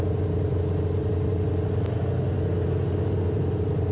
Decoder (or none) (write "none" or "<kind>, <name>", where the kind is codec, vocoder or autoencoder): none